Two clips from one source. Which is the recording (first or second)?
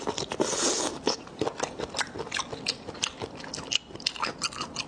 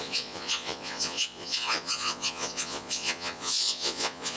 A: first